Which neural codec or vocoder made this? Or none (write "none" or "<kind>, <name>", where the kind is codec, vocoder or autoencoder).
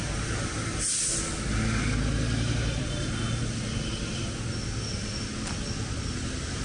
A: none